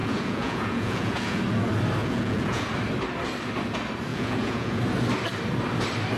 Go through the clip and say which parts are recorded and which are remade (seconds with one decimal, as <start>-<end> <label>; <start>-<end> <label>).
0.0-1.4 remade; 1.4-2.0 recorded; 2.0-2.7 remade; 2.7-4.1 recorded; 4.1-4.8 remade; 4.8-6.2 recorded